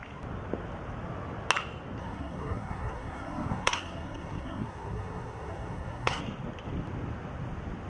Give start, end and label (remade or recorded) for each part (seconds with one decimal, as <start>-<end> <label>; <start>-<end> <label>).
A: 0.0-2.0 recorded; 2.0-6.2 remade; 6.2-7.9 recorded